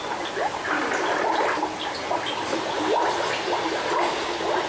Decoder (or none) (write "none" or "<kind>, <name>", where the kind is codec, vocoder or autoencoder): none